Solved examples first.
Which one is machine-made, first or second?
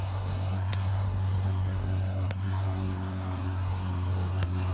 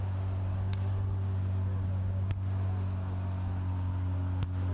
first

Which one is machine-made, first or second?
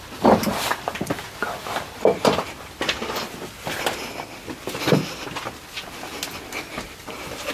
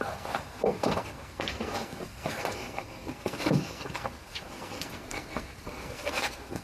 second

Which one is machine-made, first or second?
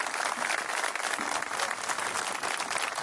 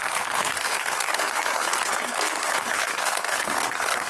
second